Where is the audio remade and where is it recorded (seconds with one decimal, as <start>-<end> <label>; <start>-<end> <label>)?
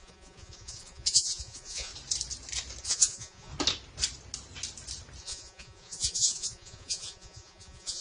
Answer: 0.0-1.9 remade; 1.9-2.8 recorded; 2.8-3.5 remade; 3.5-5.2 recorded; 5.2-8.0 remade